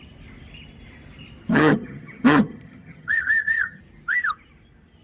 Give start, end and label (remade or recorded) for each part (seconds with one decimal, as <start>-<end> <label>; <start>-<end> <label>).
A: 0.0-1.5 recorded; 1.5-3.8 remade; 3.8-5.0 recorded